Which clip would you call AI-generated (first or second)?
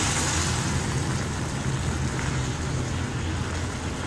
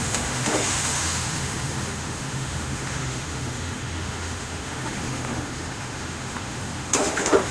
second